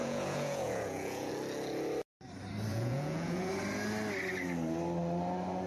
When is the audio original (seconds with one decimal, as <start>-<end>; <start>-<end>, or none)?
1.3-2.7; 3.5-5.7